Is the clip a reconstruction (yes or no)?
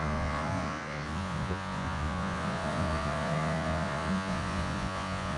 yes